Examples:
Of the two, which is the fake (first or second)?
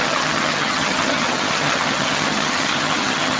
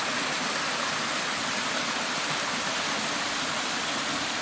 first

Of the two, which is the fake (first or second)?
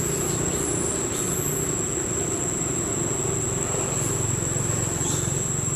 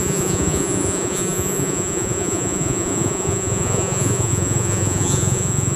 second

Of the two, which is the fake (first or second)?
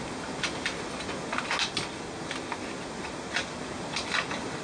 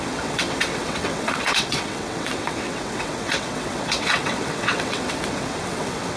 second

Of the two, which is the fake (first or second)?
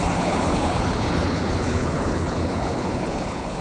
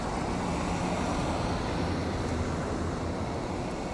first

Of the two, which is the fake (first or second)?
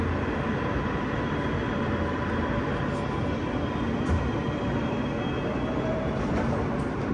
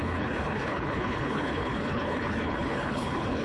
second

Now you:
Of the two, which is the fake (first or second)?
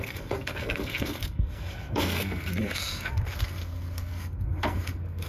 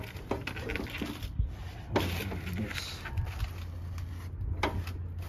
first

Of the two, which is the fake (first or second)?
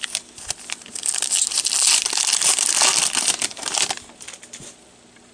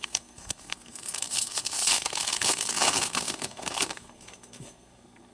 second